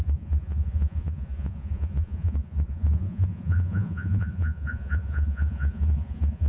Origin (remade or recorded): remade